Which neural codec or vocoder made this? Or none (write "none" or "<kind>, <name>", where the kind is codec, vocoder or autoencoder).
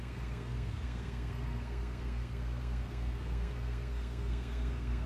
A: codec, SNAC